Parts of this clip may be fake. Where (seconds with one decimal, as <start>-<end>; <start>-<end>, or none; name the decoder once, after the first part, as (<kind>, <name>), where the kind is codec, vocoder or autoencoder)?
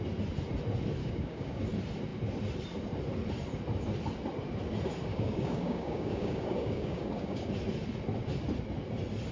1.0-1.6 (codec, DAC); 5.1-7.5